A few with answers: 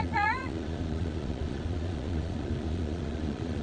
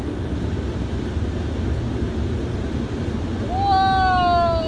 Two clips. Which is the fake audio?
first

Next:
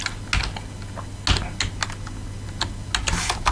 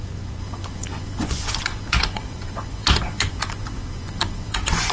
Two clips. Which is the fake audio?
second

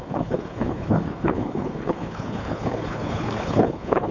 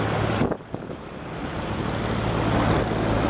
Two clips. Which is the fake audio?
first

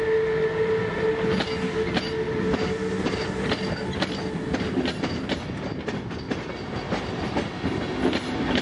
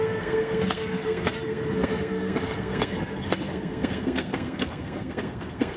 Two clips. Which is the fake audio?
second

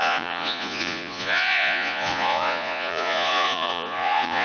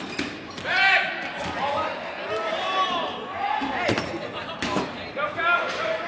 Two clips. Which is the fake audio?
first